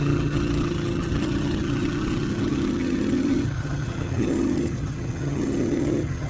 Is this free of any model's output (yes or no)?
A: no